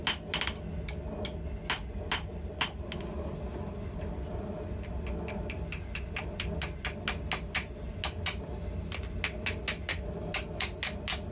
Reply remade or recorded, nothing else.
recorded